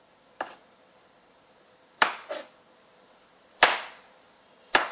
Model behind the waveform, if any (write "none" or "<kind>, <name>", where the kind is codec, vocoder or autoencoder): none